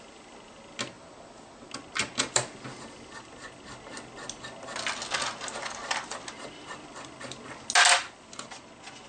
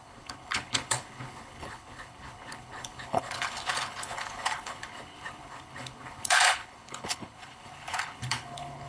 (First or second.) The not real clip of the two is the second